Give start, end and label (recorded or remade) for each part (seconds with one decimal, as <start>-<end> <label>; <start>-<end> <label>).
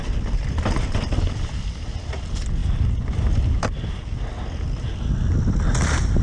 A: 0.0-2.6 recorded; 2.6-3.9 remade; 3.9-6.2 recorded